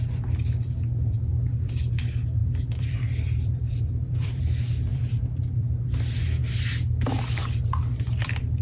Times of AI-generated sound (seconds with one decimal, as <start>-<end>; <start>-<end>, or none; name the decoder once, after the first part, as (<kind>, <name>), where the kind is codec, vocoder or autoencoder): 2.4-4.4 (vocoder, BigVGAN v2); 4.9-5.6